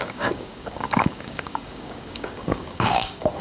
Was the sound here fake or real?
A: fake